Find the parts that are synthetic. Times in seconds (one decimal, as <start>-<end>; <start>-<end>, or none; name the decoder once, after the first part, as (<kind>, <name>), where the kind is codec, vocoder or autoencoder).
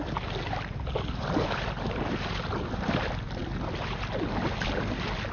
none